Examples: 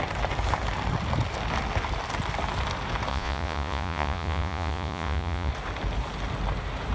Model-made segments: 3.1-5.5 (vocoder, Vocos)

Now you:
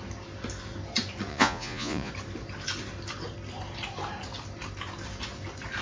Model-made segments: 1.3-2.1 (vocoder, Vocos)

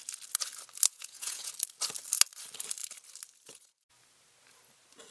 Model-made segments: 0.9-1.5 (vocoder, Vocos)

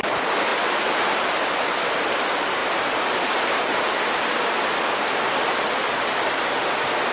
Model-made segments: none

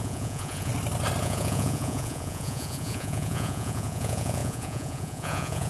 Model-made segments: 0.0-0.7 (vocoder, Vocos); 1.2-5.7

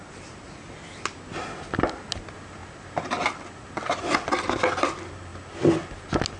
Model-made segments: none